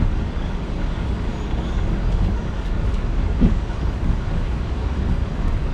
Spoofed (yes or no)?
yes